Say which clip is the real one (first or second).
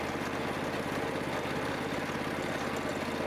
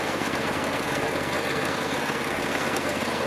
first